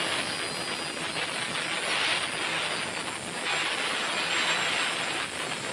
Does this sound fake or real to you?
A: real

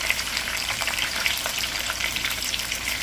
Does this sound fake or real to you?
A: fake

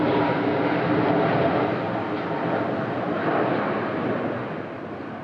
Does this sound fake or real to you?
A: real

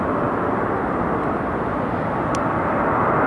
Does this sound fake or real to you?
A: real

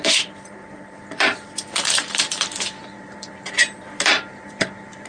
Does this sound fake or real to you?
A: fake